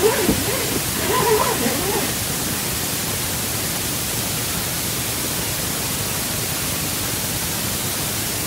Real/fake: fake